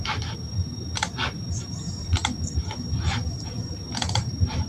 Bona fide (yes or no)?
yes